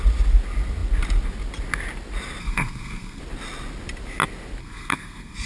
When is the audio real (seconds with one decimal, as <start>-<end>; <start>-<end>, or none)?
0.0-2.4; 3.2-4.6